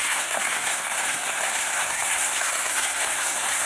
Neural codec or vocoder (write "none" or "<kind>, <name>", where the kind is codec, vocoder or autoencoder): codec, SNAC